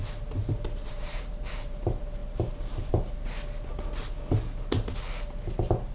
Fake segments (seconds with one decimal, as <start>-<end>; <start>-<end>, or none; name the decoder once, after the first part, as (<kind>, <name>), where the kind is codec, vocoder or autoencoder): 0.4-1.7 (vocoder, BigVGAN v2)